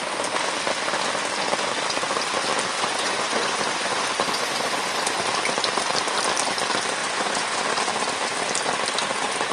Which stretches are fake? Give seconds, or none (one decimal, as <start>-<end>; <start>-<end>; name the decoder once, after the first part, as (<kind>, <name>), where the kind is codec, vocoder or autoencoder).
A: 2.7-5.2 (vocoder, Vocos); 7.0-7.6